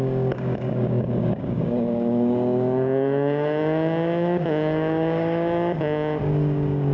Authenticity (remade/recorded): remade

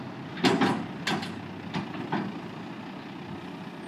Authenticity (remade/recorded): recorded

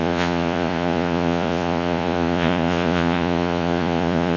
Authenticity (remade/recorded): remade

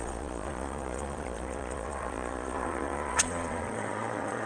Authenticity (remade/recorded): remade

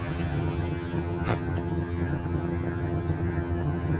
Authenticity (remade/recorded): remade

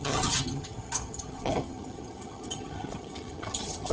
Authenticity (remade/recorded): remade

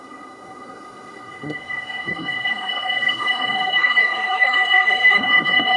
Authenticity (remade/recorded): remade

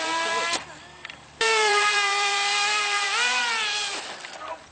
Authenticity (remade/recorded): remade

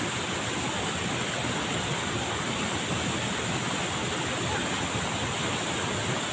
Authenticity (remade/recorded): recorded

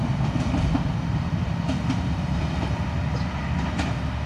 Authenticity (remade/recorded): remade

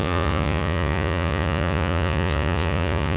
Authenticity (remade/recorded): remade